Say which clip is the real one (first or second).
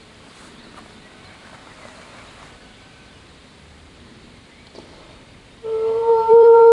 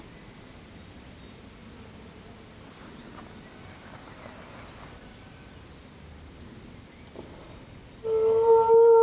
second